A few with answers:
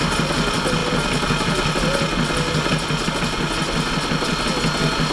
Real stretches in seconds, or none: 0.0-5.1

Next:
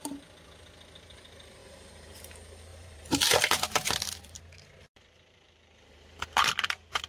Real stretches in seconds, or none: 0.0-1.6; 2.3-2.7

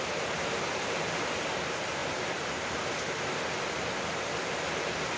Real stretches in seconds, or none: 0.0-5.2

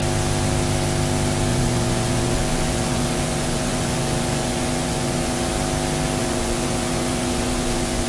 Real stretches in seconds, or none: 0.0-1.5; 5.5-6.2

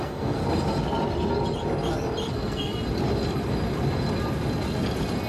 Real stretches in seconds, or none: 0.4-2.3; 2.7-5.3

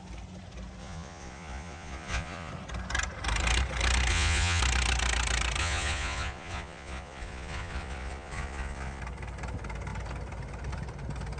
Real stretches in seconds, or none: 0.0-0.8; 2.5-4.1; 4.6-5.6; 9.0-11.4